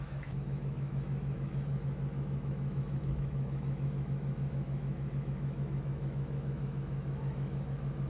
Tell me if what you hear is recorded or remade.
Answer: remade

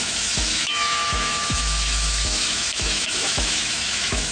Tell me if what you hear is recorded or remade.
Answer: remade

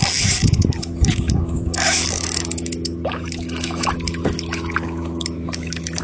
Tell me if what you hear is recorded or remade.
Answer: remade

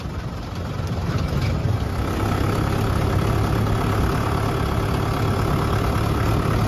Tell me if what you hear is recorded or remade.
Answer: recorded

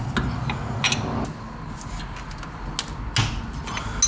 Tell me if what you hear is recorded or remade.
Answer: recorded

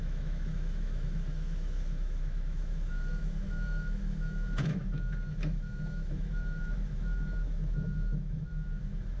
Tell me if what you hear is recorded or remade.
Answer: remade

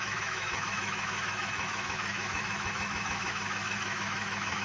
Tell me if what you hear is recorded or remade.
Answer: remade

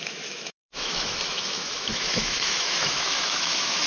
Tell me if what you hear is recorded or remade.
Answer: remade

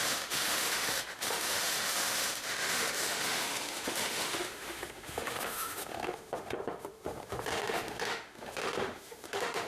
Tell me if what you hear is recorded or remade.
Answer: remade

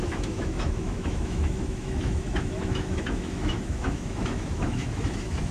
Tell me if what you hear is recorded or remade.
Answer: remade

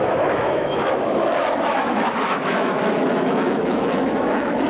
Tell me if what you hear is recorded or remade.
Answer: remade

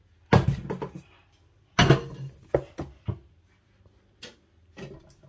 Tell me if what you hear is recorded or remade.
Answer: recorded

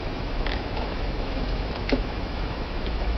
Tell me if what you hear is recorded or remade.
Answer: remade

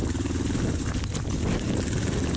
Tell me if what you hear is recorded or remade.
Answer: recorded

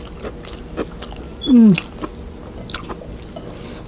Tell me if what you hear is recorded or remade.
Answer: recorded